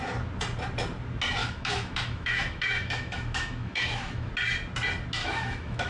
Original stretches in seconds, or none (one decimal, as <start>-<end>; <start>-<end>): 0.0-1.4; 4.3-5.2